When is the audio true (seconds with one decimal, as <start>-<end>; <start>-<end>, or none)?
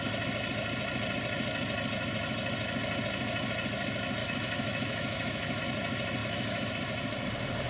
0.0-4.2; 5.6-6.2; 6.7-7.7